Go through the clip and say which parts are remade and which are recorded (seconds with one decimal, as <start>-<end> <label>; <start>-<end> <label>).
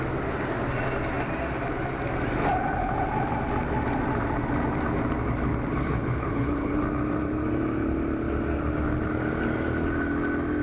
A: 0.0-5.8 recorded; 5.8-6.8 remade; 6.8-10.6 recorded